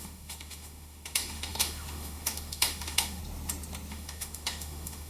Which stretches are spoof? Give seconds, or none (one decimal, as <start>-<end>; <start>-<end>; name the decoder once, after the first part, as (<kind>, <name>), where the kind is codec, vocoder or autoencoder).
0.0-3.2 (autoencoder, DAC-VAE); 3.9-5.1